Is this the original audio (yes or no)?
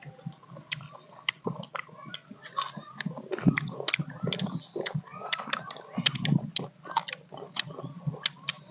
yes